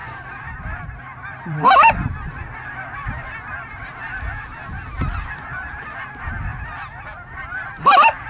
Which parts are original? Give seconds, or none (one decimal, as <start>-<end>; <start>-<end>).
none